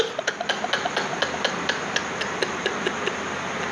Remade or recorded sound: recorded